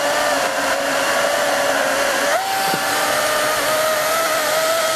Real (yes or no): yes